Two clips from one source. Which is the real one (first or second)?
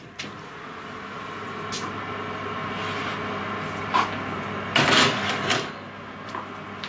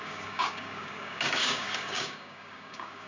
first